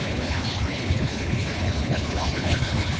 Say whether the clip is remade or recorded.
remade